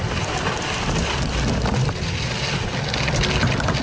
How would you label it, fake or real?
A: real